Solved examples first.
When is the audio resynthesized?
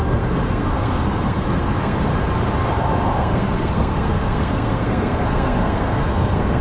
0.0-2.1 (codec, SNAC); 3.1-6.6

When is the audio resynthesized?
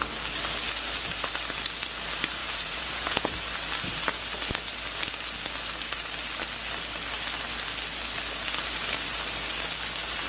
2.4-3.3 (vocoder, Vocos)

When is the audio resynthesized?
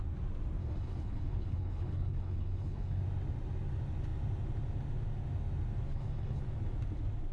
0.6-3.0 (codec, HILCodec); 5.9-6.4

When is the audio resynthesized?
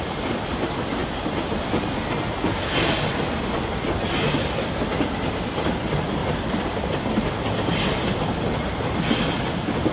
none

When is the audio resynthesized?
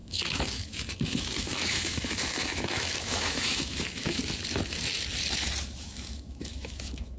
0.0-4.2 (autoencoder, DAC-VAE); 5.8-7.2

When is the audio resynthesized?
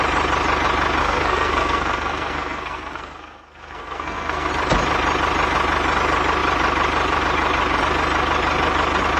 1.0-4.5 (codec, SNAC)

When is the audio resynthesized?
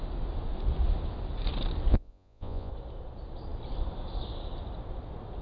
1.9-2.7 (vocoder, Vocos)